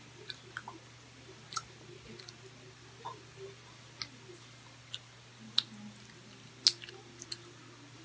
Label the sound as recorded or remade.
recorded